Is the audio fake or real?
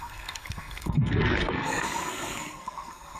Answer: fake